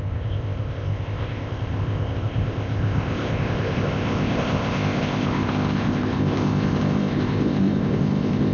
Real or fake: fake